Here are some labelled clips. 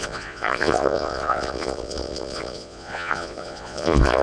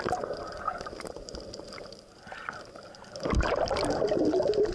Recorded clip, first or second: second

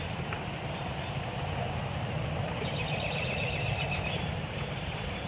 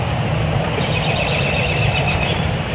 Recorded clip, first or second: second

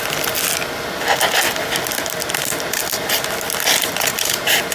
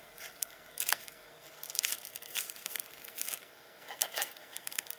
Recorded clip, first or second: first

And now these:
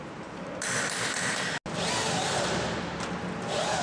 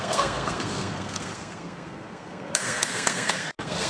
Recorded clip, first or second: first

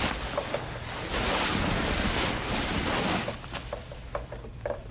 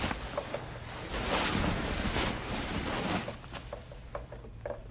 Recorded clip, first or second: second